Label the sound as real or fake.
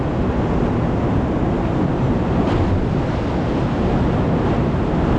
real